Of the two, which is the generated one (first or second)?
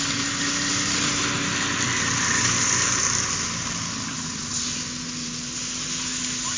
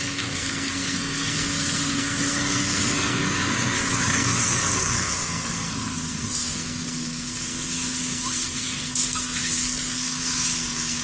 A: second